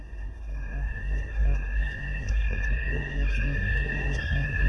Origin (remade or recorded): remade